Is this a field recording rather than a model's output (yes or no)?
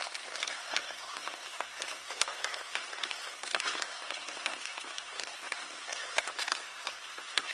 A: no